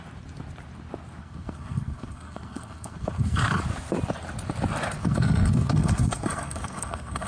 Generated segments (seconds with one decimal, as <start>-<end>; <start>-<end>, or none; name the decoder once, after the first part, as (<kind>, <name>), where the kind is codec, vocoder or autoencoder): 1.2-3.6 (codec, SNAC); 5.0-7.3